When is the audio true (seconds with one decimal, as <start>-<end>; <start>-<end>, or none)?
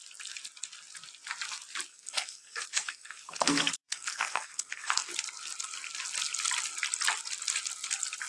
0.0-1.9; 5.1-8.3